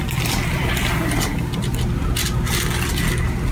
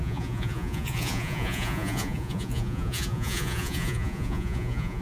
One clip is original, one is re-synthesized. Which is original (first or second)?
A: first